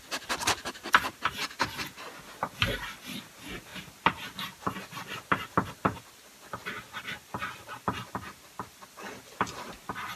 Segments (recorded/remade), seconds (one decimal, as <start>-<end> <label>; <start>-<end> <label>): 0.0-10.2 recorded